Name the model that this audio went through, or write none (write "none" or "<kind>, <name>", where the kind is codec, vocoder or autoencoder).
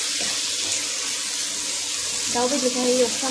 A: none